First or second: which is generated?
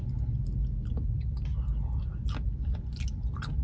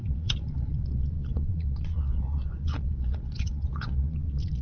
second